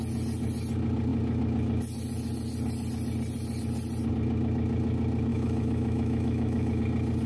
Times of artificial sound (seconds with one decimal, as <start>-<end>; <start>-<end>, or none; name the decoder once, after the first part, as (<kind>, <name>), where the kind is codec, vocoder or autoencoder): 5.3-6.8 (autoencoder, DAC-VAE)